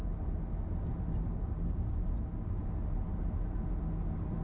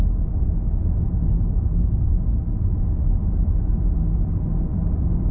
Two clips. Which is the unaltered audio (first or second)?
first